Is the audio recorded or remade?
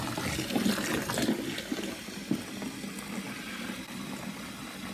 recorded